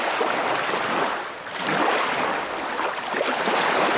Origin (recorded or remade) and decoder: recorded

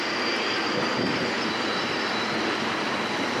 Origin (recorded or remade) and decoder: recorded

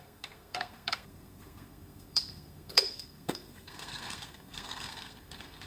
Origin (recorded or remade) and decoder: remade, codec, SNAC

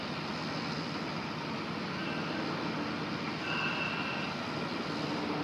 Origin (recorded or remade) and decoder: recorded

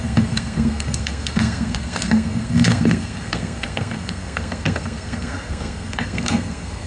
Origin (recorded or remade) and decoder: remade, codec, SNAC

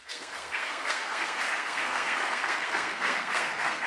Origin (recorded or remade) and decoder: remade, codec, SNAC